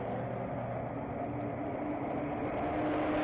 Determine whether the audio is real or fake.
real